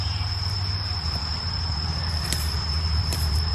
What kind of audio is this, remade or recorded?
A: remade